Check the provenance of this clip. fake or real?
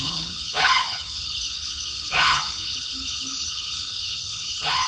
fake